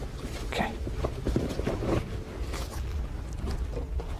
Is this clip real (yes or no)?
yes